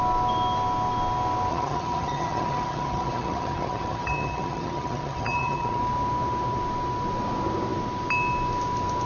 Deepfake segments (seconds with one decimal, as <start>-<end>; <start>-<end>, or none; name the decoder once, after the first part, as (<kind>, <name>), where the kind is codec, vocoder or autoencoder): 1.5-5.8 (vocoder, HiFi-GAN)